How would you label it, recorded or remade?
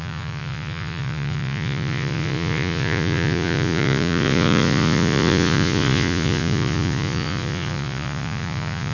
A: remade